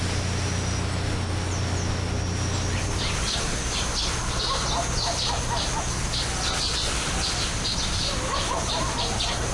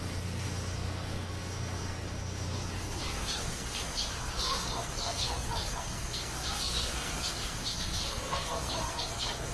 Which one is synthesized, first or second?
second